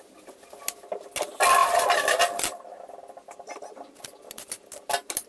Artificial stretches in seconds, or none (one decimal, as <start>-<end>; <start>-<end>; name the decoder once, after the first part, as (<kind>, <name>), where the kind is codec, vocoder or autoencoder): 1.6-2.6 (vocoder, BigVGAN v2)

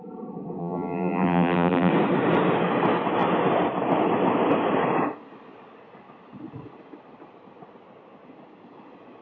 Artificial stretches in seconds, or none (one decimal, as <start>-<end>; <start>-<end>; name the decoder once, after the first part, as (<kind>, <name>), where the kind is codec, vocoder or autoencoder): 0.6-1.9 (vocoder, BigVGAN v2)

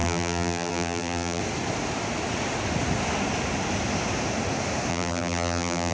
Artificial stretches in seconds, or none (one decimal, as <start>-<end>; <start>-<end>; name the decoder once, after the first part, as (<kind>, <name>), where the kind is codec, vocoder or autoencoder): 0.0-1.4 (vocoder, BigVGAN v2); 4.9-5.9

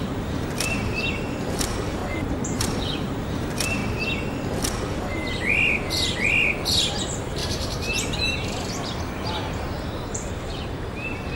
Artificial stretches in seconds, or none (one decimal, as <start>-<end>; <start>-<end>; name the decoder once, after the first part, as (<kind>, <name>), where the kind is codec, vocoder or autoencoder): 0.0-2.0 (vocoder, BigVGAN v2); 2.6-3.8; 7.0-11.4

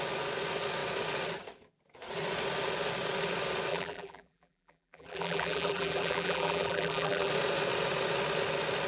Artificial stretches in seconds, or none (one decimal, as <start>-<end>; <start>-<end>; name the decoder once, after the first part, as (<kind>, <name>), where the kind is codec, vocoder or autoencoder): 3.7-7.3 (vocoder, BigVGAN v2)

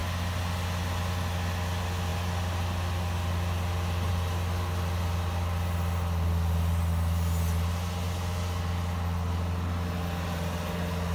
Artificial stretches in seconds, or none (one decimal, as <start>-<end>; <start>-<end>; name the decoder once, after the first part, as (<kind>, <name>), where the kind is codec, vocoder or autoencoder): none

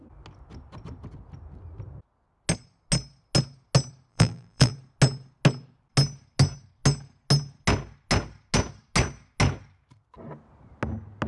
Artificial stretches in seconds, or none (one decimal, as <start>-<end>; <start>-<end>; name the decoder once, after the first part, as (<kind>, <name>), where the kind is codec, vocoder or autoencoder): 4.1-4.7 (vocoder, BigVGAN v2)

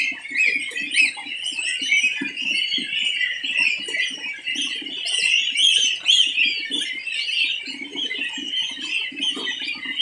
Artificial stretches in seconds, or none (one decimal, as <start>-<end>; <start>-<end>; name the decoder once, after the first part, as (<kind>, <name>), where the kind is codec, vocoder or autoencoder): none